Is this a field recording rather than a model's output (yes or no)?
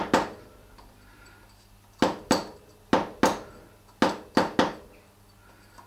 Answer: yes